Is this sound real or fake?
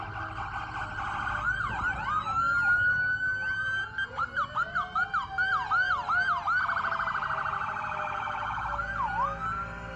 real